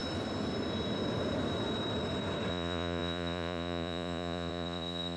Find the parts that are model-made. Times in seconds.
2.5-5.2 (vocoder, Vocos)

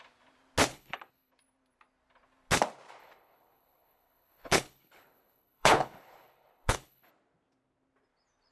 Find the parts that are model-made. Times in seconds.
0.7-1.3 (codec, HILCodec); 3.0-7.1

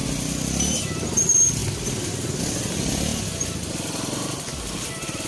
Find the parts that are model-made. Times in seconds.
none

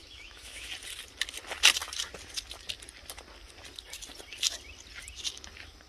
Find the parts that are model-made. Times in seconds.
0.0-0.7 (autoencoder, DAC-VAE)

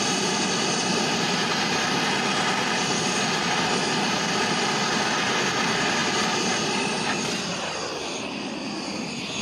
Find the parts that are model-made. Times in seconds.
none

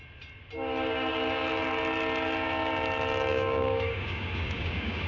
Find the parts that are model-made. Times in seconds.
3.3-5.1 (codec, DAC)